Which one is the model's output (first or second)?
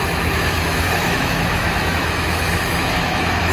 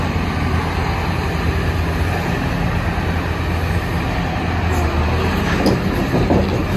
first